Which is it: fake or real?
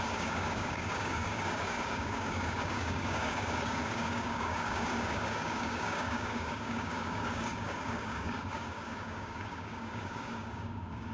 fake